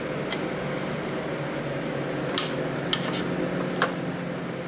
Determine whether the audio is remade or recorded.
recorded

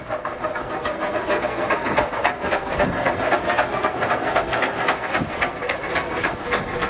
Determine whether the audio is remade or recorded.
remade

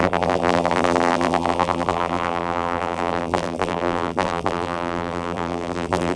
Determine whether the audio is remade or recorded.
remade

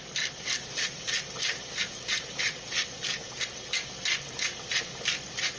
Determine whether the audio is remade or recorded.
recorded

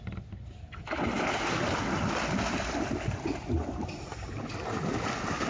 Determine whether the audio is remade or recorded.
recorded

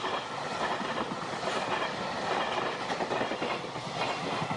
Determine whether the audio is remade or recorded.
recorded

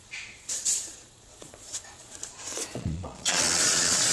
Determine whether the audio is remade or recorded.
remade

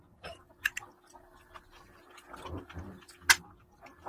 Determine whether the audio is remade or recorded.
recorded